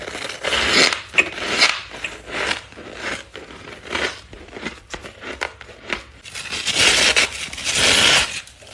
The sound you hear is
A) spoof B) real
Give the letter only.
B